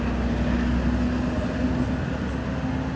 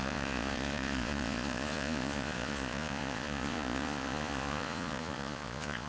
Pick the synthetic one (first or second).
second